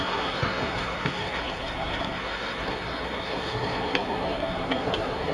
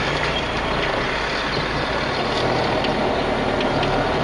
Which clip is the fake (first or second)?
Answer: first